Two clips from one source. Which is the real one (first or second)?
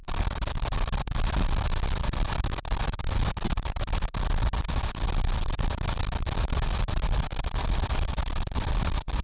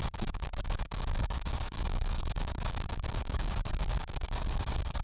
first